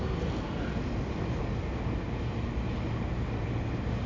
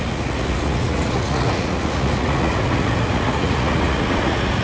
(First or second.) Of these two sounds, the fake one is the second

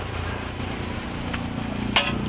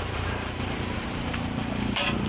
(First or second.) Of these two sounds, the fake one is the second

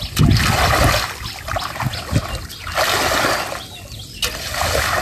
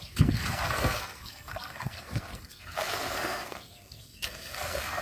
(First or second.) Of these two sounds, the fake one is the second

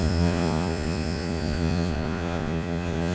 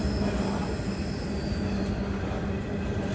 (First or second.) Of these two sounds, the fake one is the first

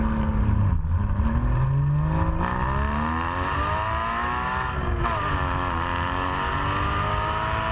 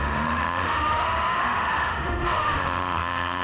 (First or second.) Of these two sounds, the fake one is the second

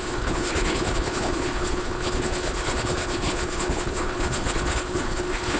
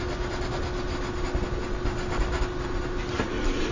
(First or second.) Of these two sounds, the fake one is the first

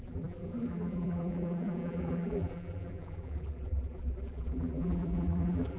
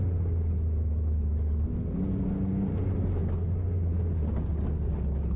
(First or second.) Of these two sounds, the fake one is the first